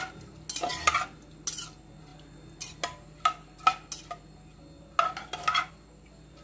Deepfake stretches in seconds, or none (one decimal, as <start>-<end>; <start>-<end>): none